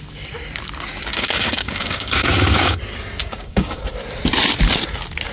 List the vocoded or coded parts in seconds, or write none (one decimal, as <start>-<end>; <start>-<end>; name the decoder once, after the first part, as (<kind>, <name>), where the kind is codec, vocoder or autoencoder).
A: 1.1-2.8 (codec, DAC); 3.2-3.8